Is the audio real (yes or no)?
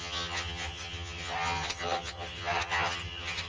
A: no